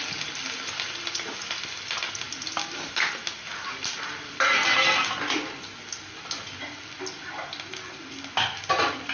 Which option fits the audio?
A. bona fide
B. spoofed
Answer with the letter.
A